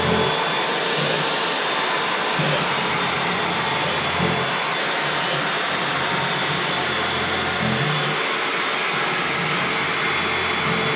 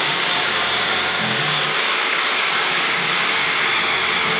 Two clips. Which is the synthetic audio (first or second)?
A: second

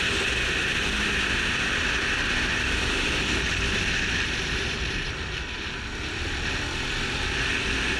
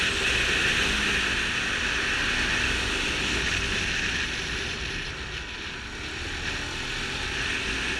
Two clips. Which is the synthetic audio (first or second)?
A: first